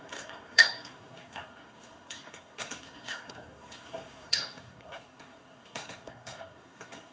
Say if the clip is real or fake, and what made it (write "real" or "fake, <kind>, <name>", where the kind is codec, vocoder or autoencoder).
fake, codec, SNAC